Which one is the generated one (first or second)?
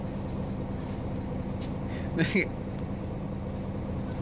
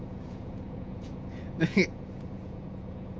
second